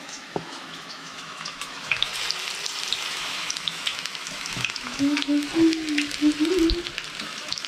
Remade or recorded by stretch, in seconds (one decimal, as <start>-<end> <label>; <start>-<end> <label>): 0.0-2.1 remade; 2.1-3.1 recorded; 3.1-5.5 remade; 5.5-7.2 recorded; 7.2-7.7 remade